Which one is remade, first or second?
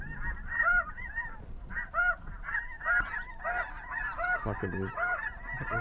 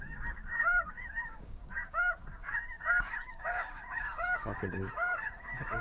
second